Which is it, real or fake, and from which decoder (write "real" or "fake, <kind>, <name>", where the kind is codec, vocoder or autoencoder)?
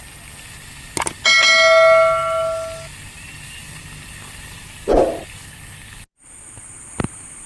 real